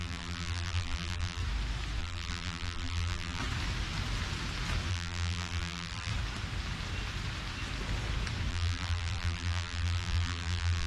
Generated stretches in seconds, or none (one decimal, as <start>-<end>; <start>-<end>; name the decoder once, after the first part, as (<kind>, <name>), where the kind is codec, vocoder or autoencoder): 0.0-1.4 (vocoder, BigVGAN v2); 2.0-3.4; 4.9-6.1; 8.5-10.9